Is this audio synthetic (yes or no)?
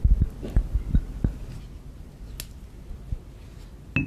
no